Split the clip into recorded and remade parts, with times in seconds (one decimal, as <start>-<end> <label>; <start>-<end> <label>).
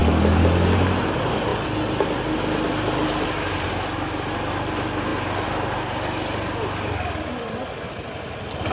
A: 0.0-8.7 recorded